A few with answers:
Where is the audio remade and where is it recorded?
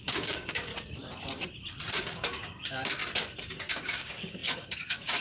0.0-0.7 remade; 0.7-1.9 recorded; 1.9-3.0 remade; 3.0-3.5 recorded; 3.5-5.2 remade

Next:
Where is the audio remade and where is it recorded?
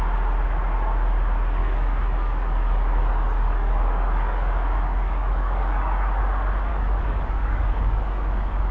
0.0-1.6 recorded; 1.6-6.2 remade; 6.2-6.7 recorded; 6.7-8.7 remade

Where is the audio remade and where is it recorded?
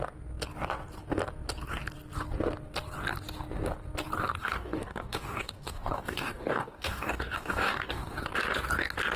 0.0-4.4 recorded; 4.4-8.2 remade; 8.2-9.2 recorded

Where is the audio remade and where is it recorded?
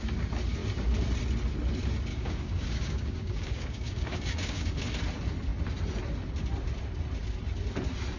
0.0-2.1 recorded; 2.1-4.8 remade; 4.8-8.2 recorded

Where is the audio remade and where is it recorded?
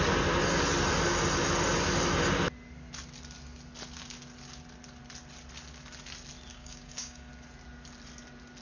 0.0-6.5 recorded; 6.5-7.3 remade; 7.3-8.6 recorded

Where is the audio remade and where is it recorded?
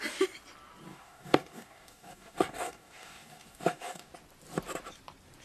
0.0-0.9 recorded; 0.9-4.1 remade; 4.1-5.4 recorded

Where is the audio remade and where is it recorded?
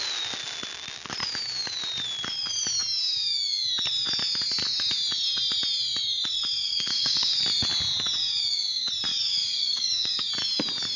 0.0-6.7 recorded; 6.7-7.4 remade; 7.4-9.1 recorded; 9.1-10.3 remade; 10.3-11.0 recorded